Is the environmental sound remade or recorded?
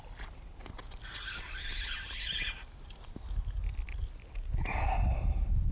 recorded